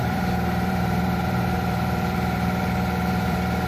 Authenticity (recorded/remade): remade